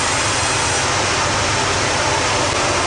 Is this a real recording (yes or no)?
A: yes